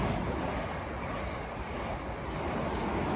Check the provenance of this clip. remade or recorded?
recorded